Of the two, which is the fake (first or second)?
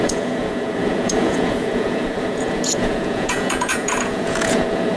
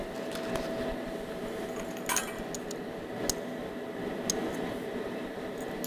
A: first